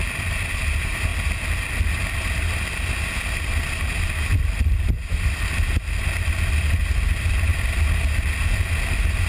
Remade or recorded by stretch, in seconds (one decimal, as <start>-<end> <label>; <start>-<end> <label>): 0.0-9.3 recorded

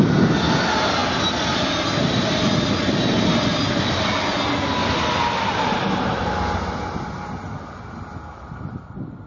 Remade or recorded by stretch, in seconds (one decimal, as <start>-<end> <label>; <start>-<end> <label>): 0.0-9.3 recorded

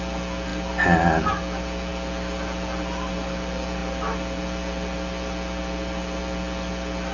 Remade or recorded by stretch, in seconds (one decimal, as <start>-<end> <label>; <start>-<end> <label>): 0.0-7.1 recorded

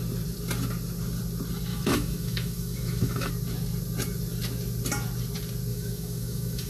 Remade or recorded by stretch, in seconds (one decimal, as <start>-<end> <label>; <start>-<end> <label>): 0.0-1.7 recorded; 1.7-3.3 remade; 3.3-5.7 recorded; 5.7-6.7 remade